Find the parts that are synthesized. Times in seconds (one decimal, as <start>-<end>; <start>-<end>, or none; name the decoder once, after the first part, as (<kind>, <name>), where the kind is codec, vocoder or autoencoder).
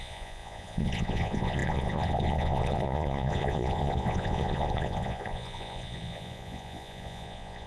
0.0-7.7 (vocoder, Vocos)